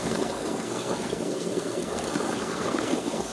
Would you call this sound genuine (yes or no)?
no